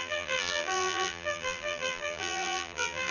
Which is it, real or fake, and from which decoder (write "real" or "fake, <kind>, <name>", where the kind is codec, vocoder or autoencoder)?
fake, vocoder, BigVGAN v2